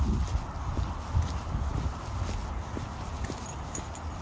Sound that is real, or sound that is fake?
real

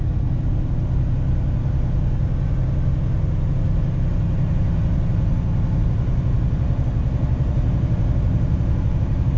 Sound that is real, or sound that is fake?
real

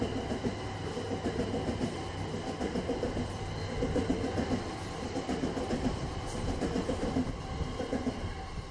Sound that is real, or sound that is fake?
real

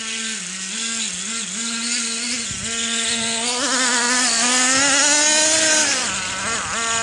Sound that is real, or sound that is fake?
real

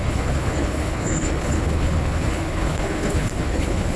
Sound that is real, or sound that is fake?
fake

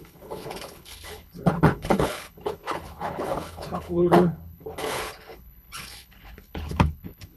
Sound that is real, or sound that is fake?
fake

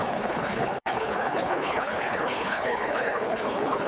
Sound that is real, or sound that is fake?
fake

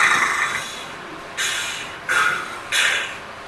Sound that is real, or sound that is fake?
real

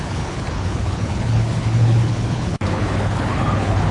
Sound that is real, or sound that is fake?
fake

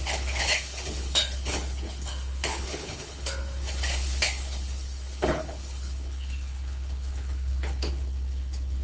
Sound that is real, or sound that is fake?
fake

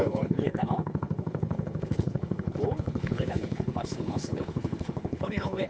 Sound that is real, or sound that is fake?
fake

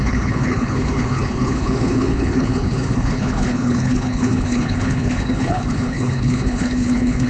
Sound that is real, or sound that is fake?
fake